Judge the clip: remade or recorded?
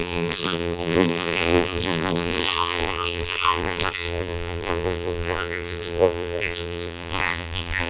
remade